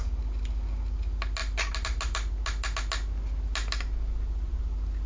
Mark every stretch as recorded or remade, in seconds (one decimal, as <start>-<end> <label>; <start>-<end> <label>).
0.0-5.1 recorded